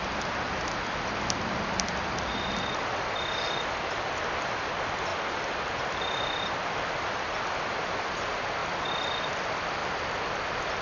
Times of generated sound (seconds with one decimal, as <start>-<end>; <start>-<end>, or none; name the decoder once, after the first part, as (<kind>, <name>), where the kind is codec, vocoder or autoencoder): 5.1-7.6 (vocoder, BigVGAN v2); 9.8-10.8